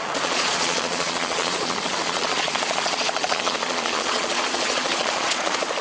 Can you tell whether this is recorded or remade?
remade